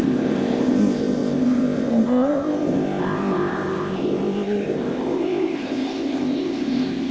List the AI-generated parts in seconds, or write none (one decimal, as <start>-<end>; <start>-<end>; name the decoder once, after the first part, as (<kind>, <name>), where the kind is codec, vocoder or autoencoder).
0.0-7.1 (codec, ZipCodec)